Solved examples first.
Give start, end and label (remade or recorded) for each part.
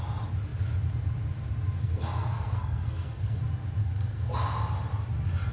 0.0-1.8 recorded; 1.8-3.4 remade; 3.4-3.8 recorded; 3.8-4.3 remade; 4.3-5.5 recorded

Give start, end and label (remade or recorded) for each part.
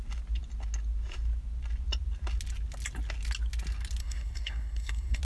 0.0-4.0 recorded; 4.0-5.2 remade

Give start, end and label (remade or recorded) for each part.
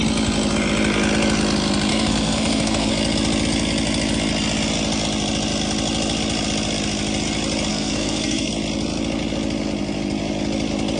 0.0-1.9 recorded; 1.9-2.9 remade; 2.9-7.7 recorded; 7.7-8.5 remade; 8.5-11.0 recorded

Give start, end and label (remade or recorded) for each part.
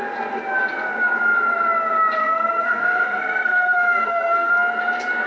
0.0-2.2 recorded; 2.2-4.5 remade; 4.5-5.3 recorded